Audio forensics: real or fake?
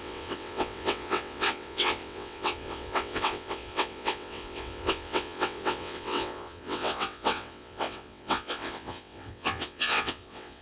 fake